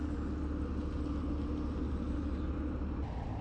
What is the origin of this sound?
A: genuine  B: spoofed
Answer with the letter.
A